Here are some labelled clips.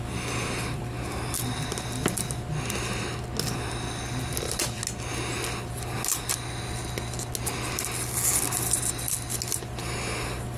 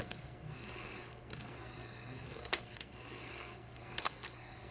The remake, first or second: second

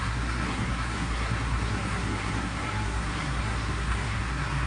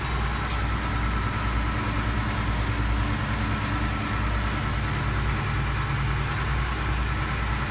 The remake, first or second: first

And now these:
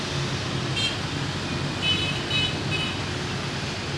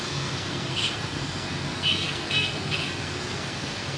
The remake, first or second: second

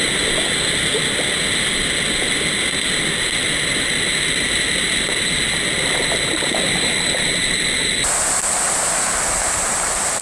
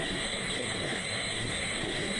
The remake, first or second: second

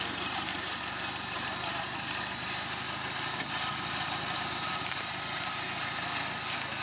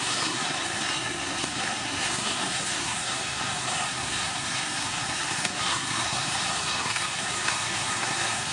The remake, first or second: second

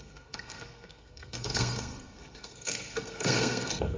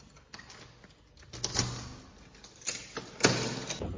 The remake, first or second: first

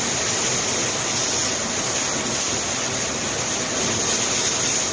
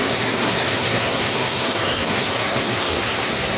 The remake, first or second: second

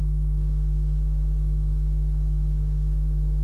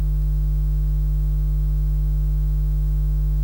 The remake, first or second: first